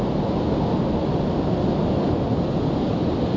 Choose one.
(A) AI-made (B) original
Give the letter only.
B